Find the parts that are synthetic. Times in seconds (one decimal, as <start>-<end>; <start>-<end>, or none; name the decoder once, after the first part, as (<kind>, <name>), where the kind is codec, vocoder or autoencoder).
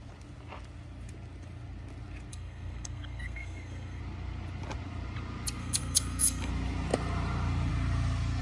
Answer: 2.3-4.0 (codec, SNAC); 5.6-6.5